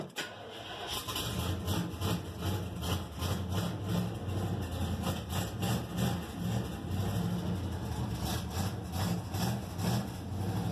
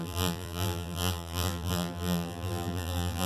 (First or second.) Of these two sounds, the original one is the first